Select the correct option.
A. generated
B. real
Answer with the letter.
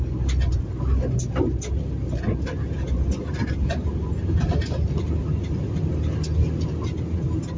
B